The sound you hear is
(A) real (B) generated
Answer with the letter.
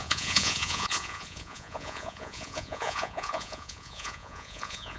B